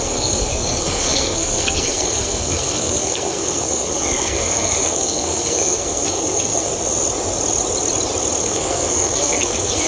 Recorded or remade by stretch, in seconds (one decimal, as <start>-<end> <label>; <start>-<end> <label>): 0.0-6.7 remade; 6.7-8.4 recorded; 8.4-9.9 remade